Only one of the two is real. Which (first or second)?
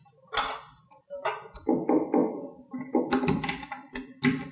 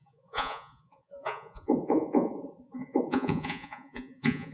first